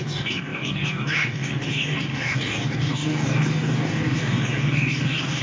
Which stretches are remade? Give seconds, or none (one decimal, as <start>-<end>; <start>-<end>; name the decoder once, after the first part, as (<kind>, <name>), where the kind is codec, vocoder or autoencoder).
0.0-5.4 (codec, DAC)

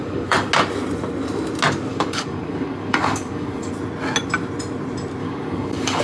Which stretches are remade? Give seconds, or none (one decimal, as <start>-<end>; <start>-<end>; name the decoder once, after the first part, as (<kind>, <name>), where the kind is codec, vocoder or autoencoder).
0.0-0.5 (codec, DAC); 1.9-3.7; 5.2-6.0

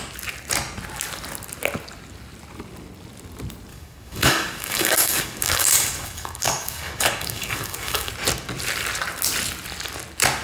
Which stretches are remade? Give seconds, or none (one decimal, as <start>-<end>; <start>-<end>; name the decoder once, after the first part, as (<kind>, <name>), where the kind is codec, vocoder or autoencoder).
3.7-8.1 (codec, DAC)

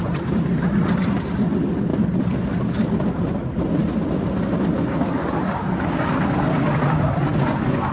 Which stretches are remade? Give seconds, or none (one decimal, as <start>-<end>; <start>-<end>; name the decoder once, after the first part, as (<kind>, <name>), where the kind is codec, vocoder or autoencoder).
none